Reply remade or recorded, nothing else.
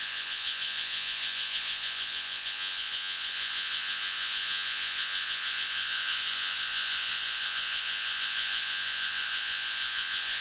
remade